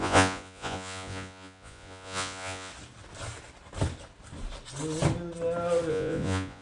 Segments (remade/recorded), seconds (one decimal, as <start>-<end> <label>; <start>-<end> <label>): 0.0-2.7 remade; 2.7-5.9 recorded; 5.9-6.6 remade